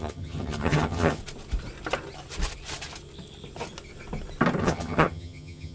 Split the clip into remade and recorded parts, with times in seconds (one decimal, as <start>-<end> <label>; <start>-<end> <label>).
0.0-1.2 remade; 1.2-4.6 recorded; 4.6-5.7 remade